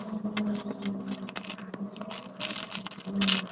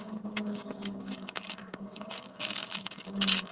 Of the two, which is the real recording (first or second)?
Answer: first